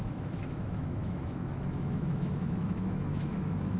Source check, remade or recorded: remade